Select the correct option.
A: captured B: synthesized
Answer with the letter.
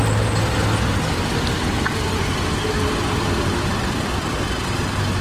A